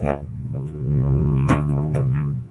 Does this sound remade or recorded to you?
remade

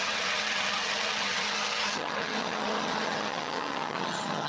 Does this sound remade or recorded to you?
remade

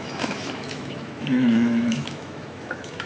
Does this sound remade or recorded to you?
remade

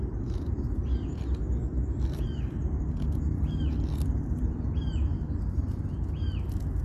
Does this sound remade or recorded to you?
recorded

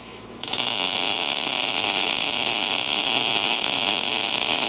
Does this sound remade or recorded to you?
remade